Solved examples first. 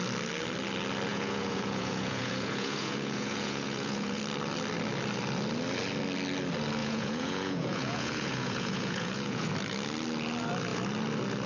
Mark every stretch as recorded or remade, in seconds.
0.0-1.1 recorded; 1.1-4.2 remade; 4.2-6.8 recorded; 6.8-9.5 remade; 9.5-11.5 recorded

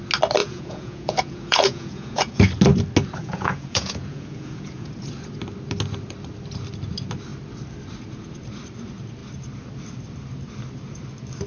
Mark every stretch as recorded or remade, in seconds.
0.0-0.4 recorded; 0.4-2.4 remade; 2.4-3.2 recorded; 3.2-4.9 remade; 4.9-11.5 recorded